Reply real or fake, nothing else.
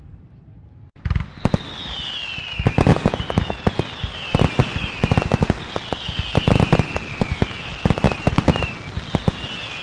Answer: real